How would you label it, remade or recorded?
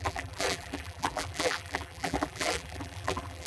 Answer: remade